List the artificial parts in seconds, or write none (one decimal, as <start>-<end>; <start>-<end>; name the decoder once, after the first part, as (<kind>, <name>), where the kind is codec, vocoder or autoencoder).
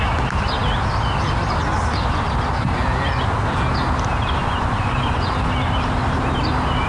4.4-5.3 (vocoder, Vocos)